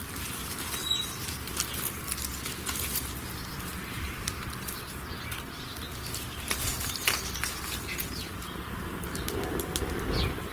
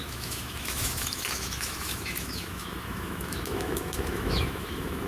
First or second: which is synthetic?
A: second